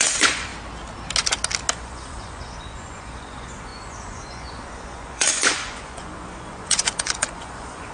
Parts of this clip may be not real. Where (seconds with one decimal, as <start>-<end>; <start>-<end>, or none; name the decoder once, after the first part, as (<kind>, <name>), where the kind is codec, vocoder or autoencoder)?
0.0-0.5 (vocoder, Vocos); 1.7-7.9